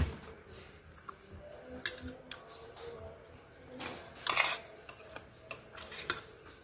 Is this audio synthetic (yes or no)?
no